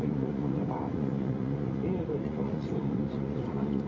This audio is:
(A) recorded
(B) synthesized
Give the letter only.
B